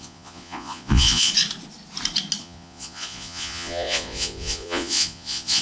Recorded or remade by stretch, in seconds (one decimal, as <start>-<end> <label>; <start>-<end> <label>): 0.0-1.3 remade; 1.3-2.4 recorded; 2.4-5.6 remade